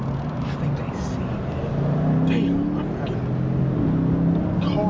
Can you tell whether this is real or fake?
real